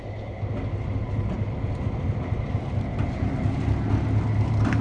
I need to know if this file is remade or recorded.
recorded